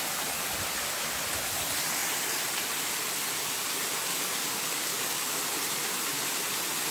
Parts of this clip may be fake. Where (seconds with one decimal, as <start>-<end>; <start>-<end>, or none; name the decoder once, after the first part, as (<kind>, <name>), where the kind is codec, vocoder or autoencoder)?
4.1-5.4 (codec, DAC)

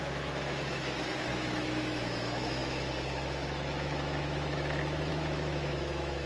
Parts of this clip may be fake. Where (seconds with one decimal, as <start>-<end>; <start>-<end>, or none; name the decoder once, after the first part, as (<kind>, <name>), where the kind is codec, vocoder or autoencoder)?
0.0-6.3 (autoencoder, DAC-VAE)

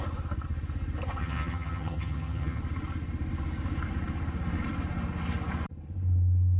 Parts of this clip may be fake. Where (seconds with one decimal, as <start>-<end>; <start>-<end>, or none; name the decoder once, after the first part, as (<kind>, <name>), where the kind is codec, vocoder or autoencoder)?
1.2-2.6 (vocoder, HiFi-GAN)

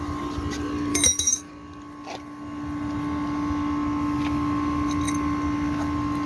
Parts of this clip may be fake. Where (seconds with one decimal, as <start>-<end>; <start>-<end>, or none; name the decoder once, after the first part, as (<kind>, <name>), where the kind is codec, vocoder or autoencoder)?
0.9-1.5 (autoencoder, DAC-VAE)

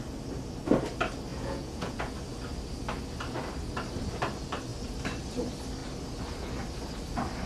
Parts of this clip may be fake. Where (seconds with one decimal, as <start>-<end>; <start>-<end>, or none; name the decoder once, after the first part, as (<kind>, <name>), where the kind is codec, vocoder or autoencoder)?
1.3-2.1 (vocoder, Vocos)

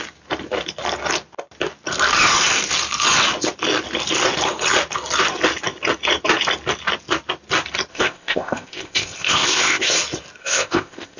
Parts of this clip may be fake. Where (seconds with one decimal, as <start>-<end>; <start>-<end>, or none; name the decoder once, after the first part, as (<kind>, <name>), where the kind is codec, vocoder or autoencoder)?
7.9-9.9 (codec, ZipCodec); 10.4-11.2

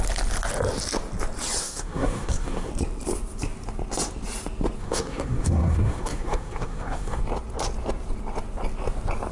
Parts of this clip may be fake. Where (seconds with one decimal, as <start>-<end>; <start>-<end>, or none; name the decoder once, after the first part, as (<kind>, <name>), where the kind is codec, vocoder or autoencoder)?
1.6-2.7 (codec, SNAC); 4.8-7.2

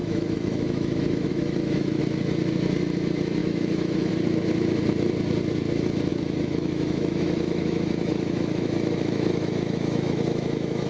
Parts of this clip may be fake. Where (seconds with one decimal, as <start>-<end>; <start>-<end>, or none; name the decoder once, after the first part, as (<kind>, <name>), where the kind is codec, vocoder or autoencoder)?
0.0-2.0 (autoencoder, DAC-VAE); 3.4-4.1; 6.1-10.9